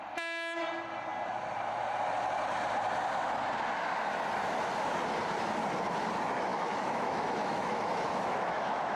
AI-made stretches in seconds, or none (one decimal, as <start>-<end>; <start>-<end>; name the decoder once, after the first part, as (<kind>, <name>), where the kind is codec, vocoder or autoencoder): 6.5-9.0 (autoencoder, DAC-VAE)